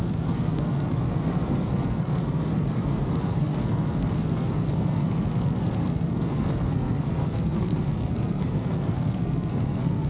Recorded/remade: remade